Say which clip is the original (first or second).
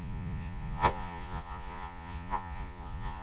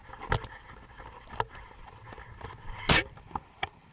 second